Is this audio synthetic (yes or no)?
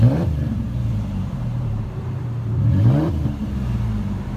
yes